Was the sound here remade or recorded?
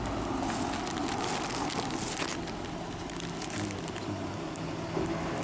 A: recorded